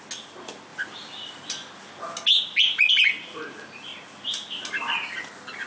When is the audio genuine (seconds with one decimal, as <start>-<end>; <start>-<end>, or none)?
0.0-5.7

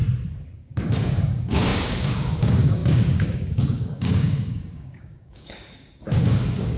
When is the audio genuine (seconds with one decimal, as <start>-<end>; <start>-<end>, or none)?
0.0-0.6